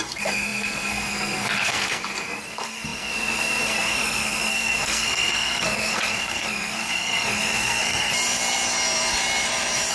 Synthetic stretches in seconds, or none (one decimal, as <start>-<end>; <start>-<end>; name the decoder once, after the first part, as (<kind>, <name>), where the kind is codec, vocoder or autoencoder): 0.0-8.1 (codec, SNAC)